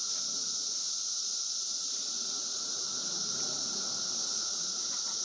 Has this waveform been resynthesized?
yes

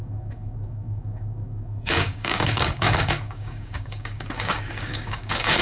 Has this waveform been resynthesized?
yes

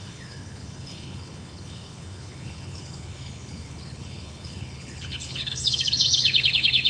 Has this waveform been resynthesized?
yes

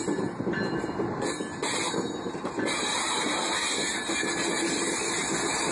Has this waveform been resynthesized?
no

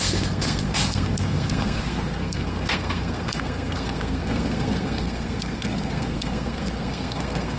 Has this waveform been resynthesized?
yes